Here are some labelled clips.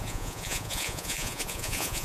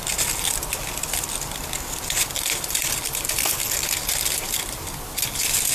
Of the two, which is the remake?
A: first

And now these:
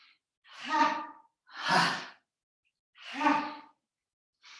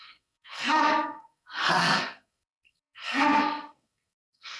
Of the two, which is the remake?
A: second